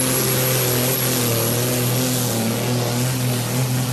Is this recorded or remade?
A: recorded